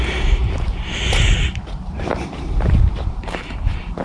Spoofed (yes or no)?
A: no